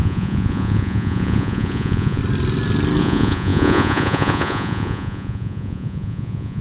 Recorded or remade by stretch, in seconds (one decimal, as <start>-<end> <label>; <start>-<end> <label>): 0.0-2.2 remade; 2.2-3.0 recorded; 3.0-6.6 remade